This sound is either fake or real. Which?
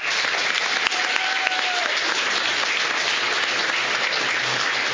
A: real